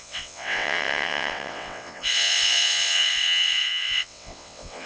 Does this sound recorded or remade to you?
remade